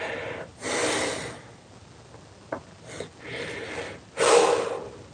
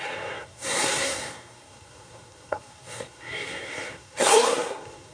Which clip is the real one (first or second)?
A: first